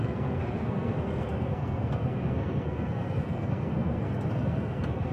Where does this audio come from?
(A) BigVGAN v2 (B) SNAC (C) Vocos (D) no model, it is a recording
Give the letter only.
B